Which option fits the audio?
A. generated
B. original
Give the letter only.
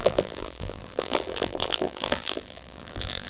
A